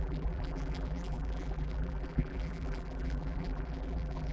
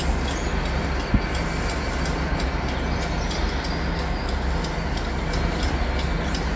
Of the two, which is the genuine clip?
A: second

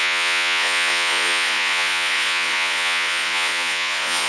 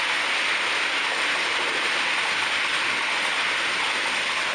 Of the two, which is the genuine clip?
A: second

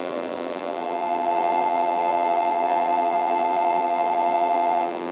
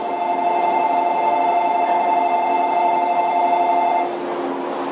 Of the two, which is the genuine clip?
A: second